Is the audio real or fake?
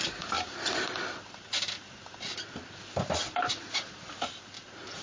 real